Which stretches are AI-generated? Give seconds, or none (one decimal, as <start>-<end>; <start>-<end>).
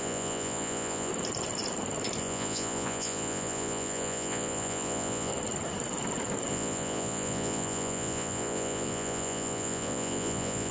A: 0.0-1.1; 2.2-5.3; 6.5-10.7